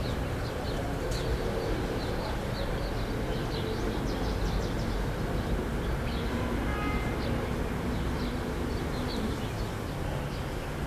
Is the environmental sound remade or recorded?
recorded